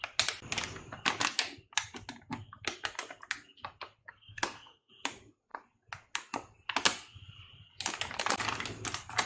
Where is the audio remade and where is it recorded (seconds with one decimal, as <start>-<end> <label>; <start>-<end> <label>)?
0.0-4.0 recorded; 4.0-4.9 remade; 4.9-9.3 recorded